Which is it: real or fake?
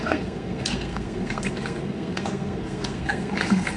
fake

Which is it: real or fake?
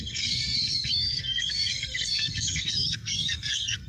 fake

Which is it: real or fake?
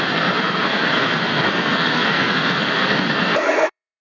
fake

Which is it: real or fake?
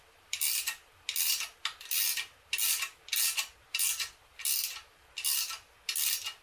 real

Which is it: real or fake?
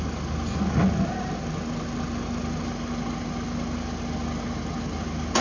real